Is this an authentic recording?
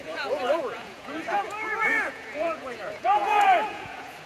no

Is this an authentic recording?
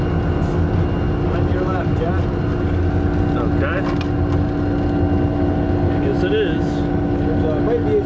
yes